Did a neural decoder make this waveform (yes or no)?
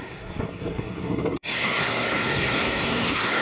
yes